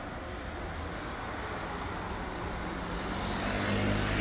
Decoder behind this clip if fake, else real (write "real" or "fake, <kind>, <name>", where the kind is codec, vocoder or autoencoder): real